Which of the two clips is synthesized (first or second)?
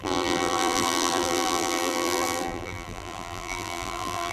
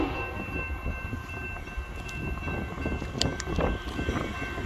first